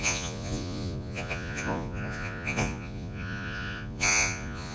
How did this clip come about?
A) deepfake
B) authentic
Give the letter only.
A